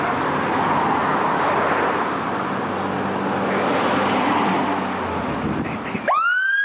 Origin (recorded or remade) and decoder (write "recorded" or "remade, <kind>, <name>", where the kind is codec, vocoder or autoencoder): recorded